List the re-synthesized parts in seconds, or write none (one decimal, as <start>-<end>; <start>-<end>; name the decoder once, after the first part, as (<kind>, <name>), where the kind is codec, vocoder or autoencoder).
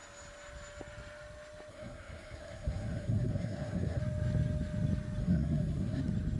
1.7-4.0 (codec, SNAC); 5.2-6.0